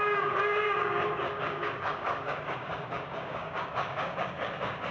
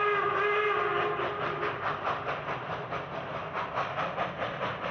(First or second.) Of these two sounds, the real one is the second